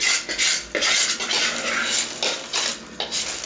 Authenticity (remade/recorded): recorded